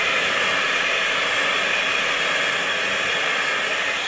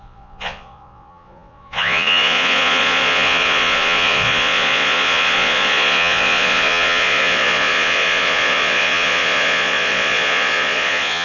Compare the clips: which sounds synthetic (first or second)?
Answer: second